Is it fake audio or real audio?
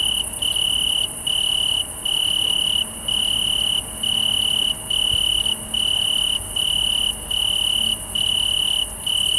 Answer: real